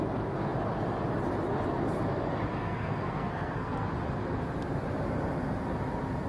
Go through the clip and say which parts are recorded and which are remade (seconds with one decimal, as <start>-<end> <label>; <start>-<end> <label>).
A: 0.0-2.6 recorded; 2.6-3.9 remade; 3.9-6.3 recorded